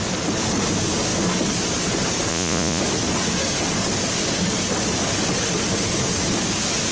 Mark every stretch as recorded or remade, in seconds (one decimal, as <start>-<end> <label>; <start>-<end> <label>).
0.0-2.3 recorded; 2.3-2.8 remade; 2.8-6.9 recorded

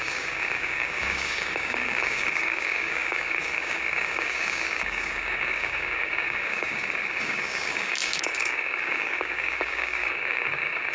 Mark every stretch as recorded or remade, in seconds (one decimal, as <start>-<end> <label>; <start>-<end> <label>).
0.0-10.9 remade

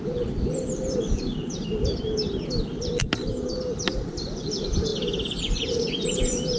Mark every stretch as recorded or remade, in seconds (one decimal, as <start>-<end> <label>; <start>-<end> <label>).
0.0-1.3 remade; 1.3-3.0 recorded; 3.0-6.6 remade

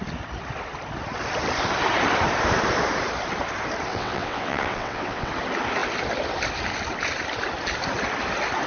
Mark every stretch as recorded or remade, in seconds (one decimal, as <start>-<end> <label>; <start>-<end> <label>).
0.0-3.9 recorded; 3.9-5.3 remade; 5.3-8.7 recorded